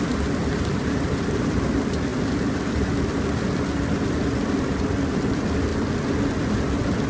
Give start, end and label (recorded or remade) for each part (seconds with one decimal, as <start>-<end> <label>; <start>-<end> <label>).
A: 0.0-0.4 recorded; 0.4-1.7 remade; 1.7-7.1 recorded